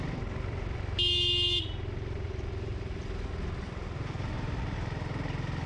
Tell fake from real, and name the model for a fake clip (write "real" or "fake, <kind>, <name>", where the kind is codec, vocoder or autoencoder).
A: real